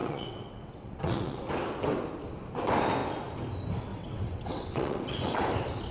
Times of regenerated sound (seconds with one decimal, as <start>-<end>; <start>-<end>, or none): 0.0-1.4; 3.9-5.4